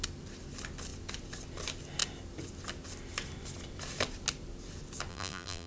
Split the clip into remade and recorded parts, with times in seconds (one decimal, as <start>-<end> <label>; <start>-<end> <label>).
0.0-5.1 recorded; 5.1-5.7 remade